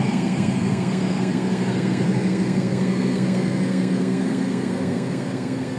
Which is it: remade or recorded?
remade